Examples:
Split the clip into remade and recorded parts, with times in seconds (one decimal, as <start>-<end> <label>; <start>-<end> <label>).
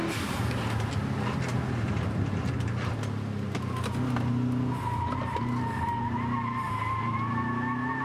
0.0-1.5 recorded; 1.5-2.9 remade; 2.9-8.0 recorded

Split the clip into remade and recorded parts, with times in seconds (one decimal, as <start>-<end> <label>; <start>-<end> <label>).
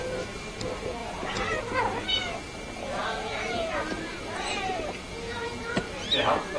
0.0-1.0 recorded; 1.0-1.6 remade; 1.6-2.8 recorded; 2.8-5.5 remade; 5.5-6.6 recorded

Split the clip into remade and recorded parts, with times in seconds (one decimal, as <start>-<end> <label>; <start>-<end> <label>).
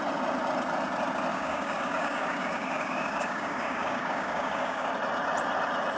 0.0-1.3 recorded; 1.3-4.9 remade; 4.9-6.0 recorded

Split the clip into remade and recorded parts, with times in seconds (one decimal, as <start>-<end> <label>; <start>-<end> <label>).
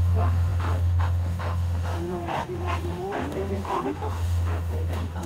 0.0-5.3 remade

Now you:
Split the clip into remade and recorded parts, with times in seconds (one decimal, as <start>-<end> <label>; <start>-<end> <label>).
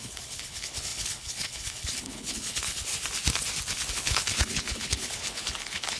0.0-2.9 remade; 2.9-3.9 recorded; 3.9-6.0 remade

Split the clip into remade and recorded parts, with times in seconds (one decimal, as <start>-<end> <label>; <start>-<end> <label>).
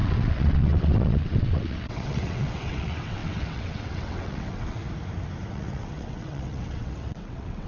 0.0-4.8 remade; 4.8-5.5 recorded; 5.5-7.7 remade